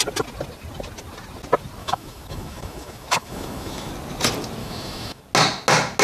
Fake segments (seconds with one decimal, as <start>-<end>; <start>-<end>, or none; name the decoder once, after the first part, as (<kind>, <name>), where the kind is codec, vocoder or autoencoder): 1.8-3.9 (autoencoder, DAC-VAE); 4.6-5.2